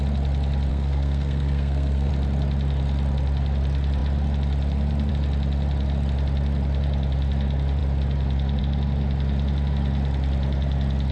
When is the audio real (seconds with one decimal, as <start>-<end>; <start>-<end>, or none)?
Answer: 0.0-0.7; 2.1-11.1